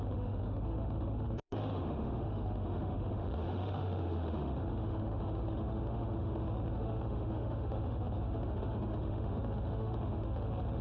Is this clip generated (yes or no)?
yes